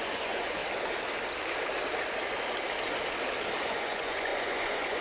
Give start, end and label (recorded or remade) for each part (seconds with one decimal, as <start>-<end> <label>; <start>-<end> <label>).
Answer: 0.0-0.6 remade; 0.6-3.6 recorded; 3.6-5.0 remade